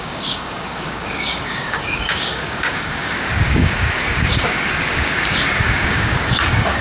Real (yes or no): no